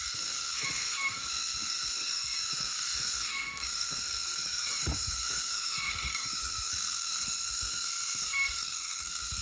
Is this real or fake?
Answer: fake